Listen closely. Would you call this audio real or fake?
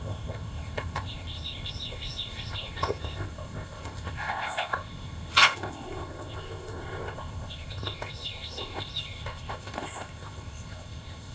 fake